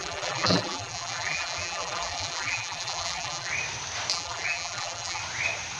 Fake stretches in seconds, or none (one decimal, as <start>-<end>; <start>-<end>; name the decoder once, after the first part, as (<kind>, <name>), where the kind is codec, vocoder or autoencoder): 0.0-3.5 (vocoder, BigVGAN v2); 4.1-5.2